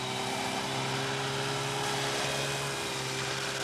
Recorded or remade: recorded